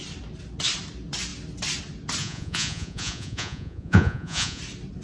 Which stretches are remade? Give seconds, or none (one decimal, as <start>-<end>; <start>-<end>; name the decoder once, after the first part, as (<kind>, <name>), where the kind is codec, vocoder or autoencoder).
2.2-4.6 (vocoder, Vocos)